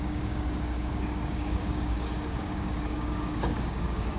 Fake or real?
fake